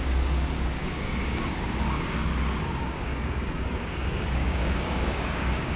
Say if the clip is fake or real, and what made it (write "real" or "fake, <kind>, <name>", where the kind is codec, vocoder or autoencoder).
fake, codec, DAC